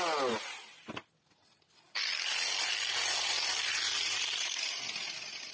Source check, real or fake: real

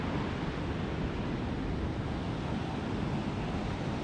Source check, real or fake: real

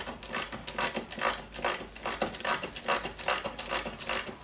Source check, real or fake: real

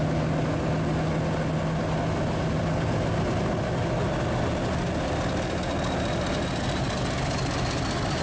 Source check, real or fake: real